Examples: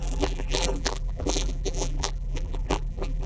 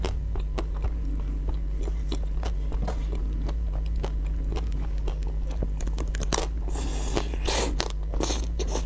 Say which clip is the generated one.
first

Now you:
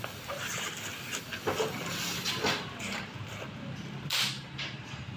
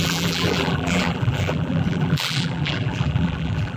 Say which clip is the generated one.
second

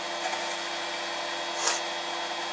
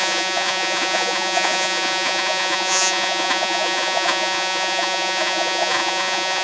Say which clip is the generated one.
second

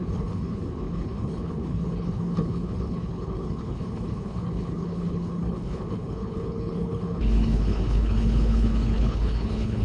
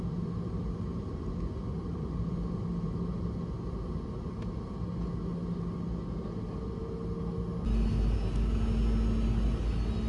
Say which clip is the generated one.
first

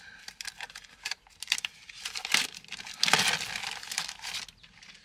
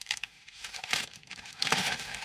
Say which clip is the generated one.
second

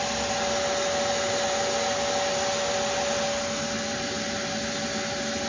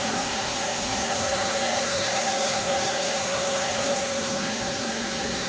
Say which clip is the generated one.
second